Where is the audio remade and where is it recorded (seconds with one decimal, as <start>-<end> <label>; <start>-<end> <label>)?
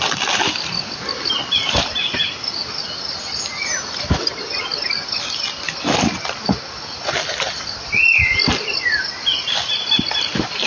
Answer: 0.0-10.7 recorded